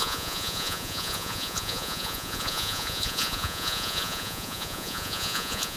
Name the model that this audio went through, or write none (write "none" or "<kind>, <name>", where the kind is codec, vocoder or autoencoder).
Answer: vocoder, Vocos